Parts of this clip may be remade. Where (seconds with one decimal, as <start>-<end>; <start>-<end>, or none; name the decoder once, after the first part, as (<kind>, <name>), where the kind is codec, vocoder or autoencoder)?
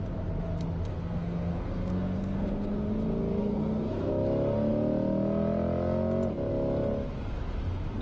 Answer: 0.9-2.9 (codec, SNAC); 3.4-4.1